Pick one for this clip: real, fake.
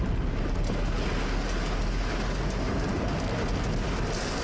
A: real